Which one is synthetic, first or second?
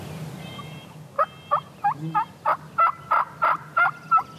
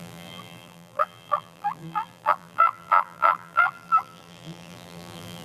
second